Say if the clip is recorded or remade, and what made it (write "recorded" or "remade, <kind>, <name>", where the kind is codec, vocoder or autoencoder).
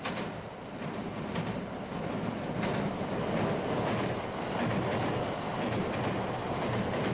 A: recorded